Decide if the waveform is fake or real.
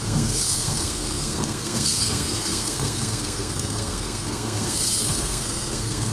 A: fake